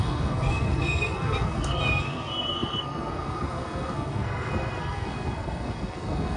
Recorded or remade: remade